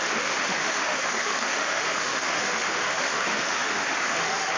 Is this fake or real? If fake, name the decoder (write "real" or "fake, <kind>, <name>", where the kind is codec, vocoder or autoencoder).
fake, autoencoder, DAC-VAE